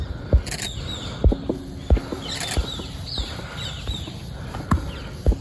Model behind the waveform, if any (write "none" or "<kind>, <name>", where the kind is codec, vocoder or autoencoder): none